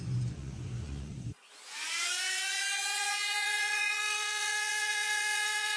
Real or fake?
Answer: fake